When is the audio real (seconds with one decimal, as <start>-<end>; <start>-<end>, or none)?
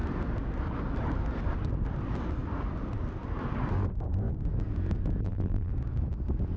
0.0-5.2; 5.7-6.6